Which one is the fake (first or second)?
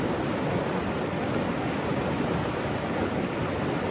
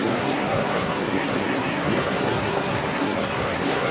second